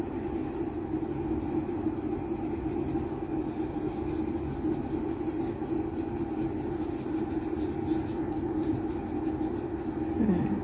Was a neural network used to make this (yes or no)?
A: no